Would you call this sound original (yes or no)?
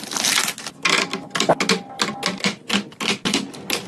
yes